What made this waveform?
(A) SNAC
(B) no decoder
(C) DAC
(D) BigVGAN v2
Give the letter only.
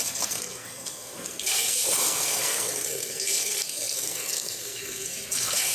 A